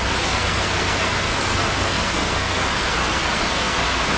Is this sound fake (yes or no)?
yes